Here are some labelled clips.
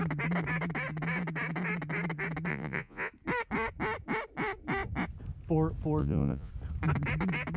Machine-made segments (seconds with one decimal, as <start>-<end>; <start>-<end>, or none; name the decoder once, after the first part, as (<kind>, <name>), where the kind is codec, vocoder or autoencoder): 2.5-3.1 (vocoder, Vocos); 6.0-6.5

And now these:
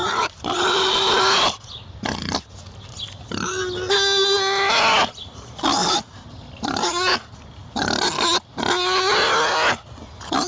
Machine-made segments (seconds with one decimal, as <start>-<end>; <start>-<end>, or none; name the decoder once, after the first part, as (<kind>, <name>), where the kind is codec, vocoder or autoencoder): 0.0-1.1 (vocoder, BigVGAN v2); 5.8-6.9

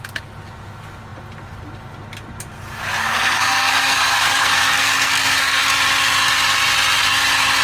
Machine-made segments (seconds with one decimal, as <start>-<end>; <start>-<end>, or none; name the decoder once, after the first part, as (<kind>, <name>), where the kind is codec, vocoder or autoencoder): 3.0-5.6 (codec, SNAC)

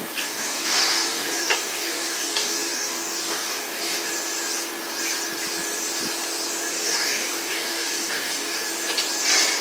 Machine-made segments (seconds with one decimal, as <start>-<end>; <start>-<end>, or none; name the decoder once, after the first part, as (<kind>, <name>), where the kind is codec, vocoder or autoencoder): 0.0-4.1 (codec, DAC); 6.7-8.7

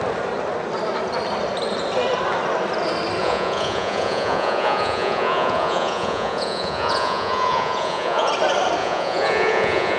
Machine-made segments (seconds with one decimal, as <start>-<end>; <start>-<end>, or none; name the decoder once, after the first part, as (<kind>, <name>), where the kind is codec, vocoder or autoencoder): 3.2-8.3 (vocoder, Vocos); 8.8-10.0

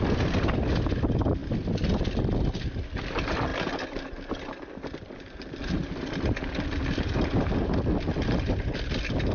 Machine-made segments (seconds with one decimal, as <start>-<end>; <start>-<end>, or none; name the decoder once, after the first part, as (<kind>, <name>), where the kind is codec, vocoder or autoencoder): none

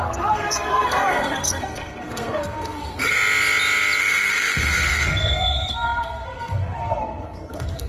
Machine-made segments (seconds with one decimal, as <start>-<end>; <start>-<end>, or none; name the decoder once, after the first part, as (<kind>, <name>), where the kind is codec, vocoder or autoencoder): 0.0-3.1 (codec, SNAC); 4.0-7.9

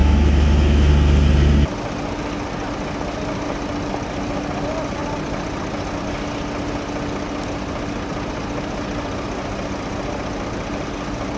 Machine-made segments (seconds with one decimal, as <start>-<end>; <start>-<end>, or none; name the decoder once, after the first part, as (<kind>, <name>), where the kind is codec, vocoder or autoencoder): 0.0-0.9 (autoencoder, DAC-VAE)